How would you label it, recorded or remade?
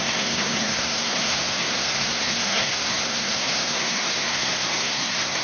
remade